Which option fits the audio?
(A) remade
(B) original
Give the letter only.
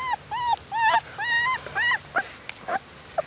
B